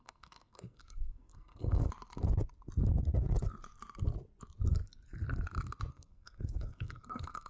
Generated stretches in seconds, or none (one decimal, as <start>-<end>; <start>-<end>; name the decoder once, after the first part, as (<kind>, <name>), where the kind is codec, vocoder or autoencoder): 0.0-1.8 (codec, SNAC); 5.9-7.5